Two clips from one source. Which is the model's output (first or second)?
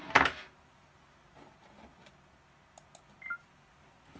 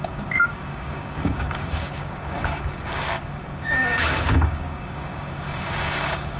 second